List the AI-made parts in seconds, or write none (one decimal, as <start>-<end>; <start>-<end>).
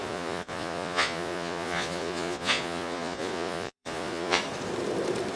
0.0-4.4